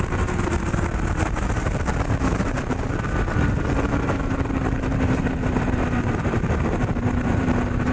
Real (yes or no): no